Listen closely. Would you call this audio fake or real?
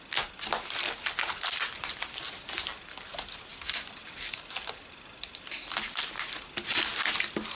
real